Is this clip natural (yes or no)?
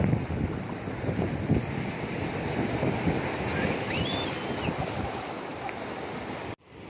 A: yes